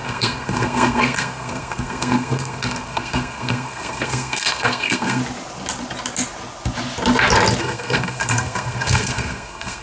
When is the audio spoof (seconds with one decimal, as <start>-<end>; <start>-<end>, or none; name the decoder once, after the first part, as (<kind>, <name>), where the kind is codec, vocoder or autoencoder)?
0.0-5.2 (codec, SNAC); 7.6-9.8